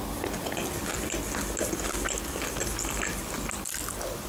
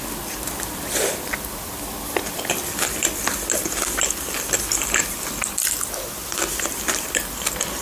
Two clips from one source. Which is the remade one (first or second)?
second